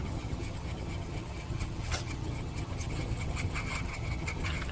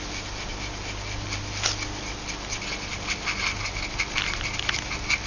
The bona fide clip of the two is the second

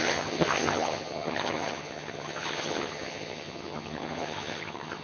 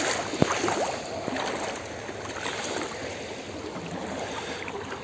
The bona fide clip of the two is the second